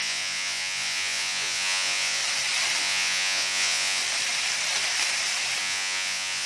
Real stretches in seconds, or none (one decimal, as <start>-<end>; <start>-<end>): 2.2-2.8; 4.0-5.6